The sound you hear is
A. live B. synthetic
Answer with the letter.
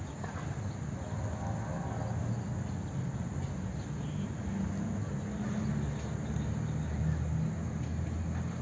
A